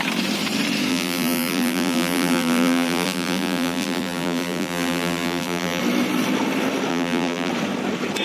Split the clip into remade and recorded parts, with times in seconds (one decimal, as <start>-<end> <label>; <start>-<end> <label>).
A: 0.0-0.9 recorded; 0.9-5.8 remade; 5.8-6.9 recorded; 6.9-7.5 remade; 7.5-8.2 recorded